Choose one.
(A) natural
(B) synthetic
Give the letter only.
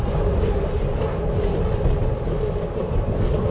A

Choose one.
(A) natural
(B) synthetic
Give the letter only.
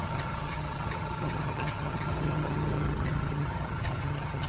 B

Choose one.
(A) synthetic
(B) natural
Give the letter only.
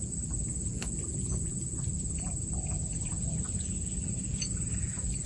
A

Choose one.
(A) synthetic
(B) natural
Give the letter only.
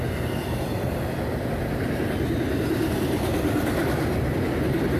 B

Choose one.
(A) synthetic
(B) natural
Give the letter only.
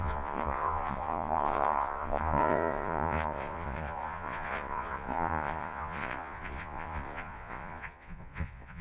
A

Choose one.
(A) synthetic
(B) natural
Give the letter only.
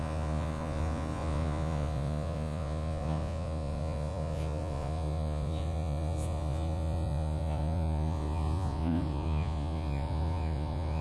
A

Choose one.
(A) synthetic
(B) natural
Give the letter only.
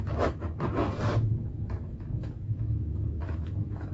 A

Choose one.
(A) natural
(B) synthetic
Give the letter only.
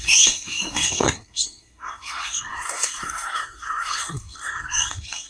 B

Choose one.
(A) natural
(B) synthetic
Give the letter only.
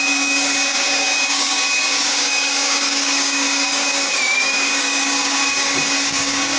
B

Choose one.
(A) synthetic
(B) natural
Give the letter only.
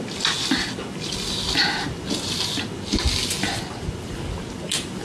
B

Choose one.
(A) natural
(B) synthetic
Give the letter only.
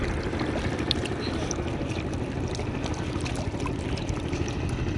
A